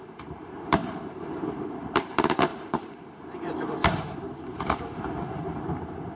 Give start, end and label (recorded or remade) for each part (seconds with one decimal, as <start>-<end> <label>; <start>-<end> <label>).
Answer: 0.0-6.2 remade